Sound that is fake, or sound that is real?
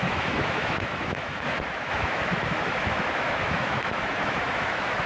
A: fake